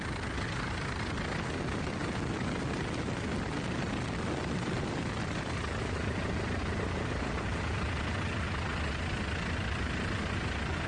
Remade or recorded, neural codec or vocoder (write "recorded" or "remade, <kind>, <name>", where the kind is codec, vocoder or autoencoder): recorded